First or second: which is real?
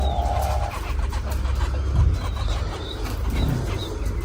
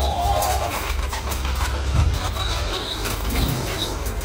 first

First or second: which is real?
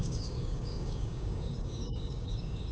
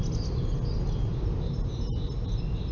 second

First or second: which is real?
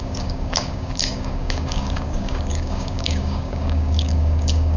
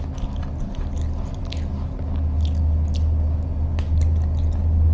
second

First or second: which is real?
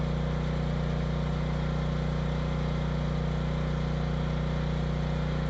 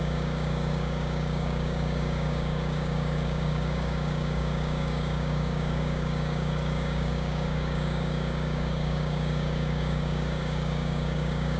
first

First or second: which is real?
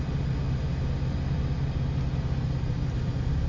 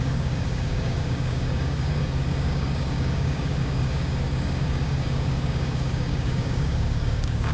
first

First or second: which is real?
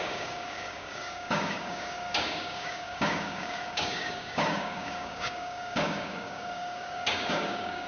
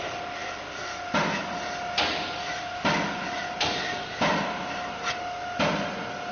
second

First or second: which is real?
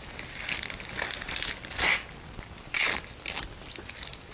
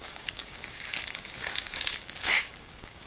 first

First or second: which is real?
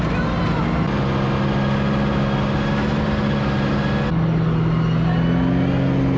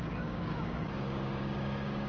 first